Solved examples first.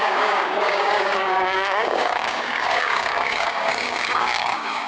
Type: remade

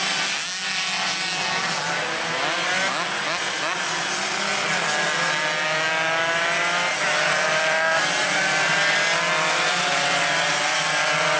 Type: recorded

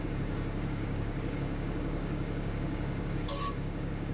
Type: remade